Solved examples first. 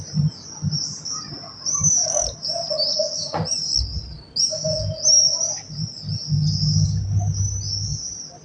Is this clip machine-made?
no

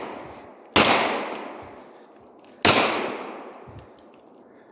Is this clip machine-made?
no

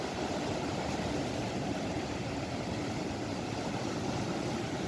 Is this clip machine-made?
no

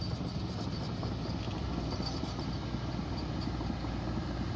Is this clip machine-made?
no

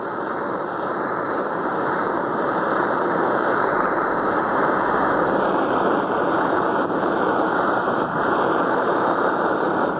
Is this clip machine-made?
yes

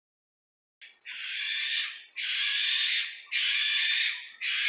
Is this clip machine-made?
no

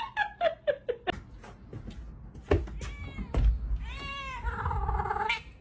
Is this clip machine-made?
no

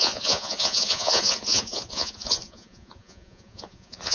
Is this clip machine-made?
yes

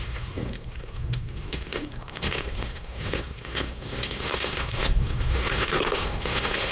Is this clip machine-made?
yes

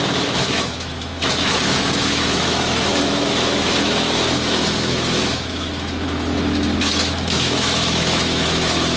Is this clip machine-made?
yes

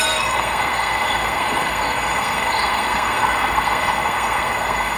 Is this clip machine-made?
yes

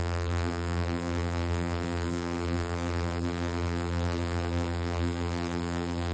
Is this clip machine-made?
yes